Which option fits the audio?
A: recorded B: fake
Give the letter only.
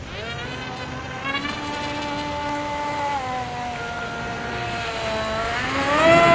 A